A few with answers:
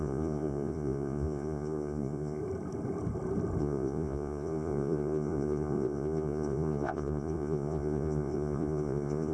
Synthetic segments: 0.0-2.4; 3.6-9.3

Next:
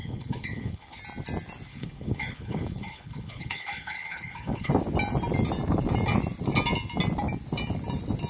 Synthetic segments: 0.0-1.0; 1.7-4.7

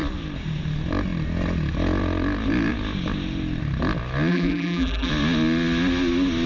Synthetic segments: 4.3-5.1

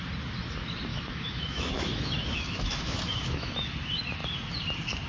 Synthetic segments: 0.9-3.7

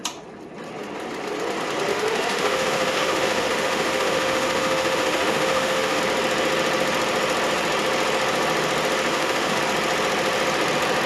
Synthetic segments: 1.9-6.0; 9.1-9.6

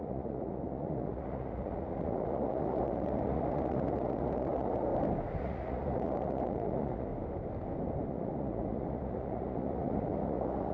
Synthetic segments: 0.0-4.9; 5.4-7.1; 8.1-10.7

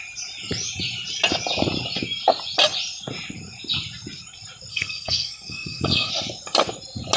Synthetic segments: 4.7-6.1